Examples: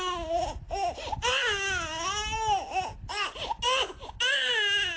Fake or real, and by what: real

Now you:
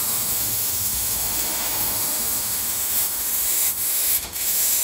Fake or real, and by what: fake, autoencoder, DAC-VAE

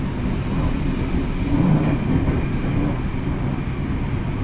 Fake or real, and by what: real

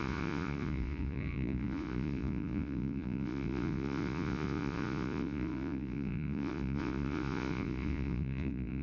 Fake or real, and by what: fake, vocoder, Vocos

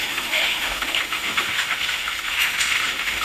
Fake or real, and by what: fake, autoencoder, DAC-VAE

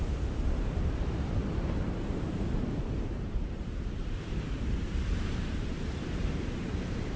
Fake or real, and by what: fake, vocoder, BigVGAN v2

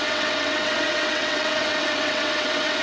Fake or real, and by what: fake, vocoder, WaveNeXt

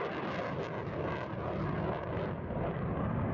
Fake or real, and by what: real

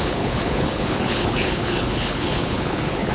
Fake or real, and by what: fake, codec, HILCodec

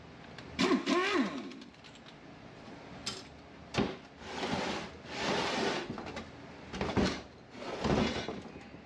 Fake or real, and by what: real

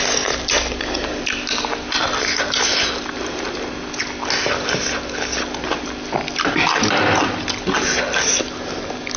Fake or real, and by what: real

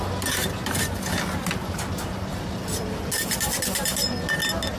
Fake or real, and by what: real